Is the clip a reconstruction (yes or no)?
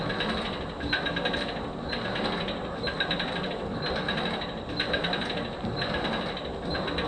no